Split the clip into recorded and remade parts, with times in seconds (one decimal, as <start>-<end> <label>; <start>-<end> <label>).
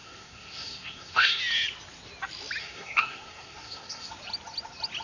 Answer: 0.0-1.4 remade; 1.4-2.6 recorded; 2.6-4.1 remade; 4.1-5.0 recorded